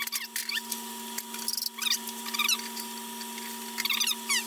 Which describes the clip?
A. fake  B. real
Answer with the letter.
B